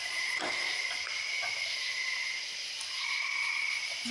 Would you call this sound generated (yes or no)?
yes